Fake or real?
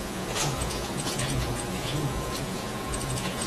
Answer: fake